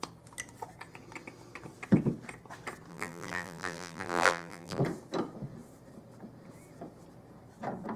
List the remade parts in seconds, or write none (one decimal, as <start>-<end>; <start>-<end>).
2.9-4.8